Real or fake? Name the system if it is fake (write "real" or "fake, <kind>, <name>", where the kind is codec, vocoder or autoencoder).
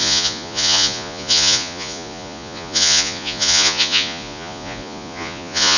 fake, vocoder, Vocos